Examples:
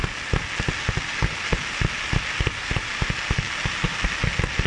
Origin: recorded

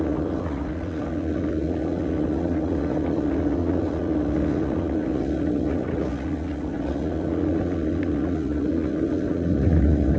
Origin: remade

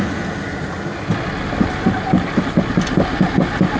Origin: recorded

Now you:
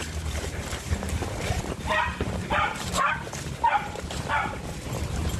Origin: recorded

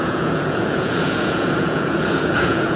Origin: remade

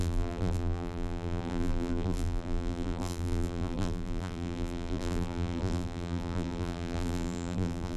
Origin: remade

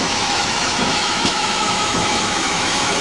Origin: remade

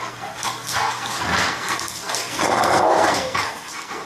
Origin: remade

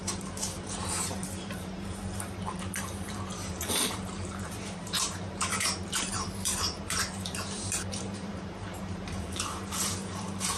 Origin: remade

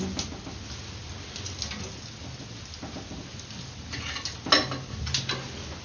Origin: recorded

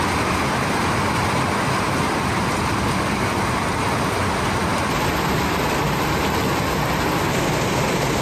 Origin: recorded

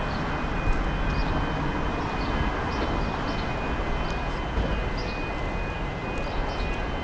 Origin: recorded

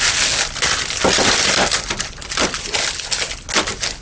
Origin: recorded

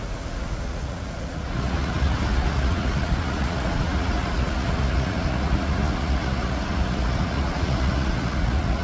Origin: remade